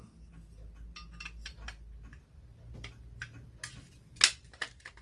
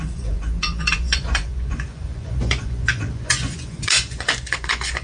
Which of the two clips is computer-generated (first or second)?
second